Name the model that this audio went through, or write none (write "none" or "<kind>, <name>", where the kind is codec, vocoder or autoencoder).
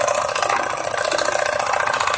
none